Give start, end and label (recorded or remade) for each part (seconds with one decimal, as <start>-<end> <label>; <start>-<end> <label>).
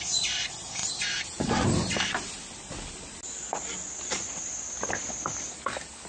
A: 0.0-6.1 recorded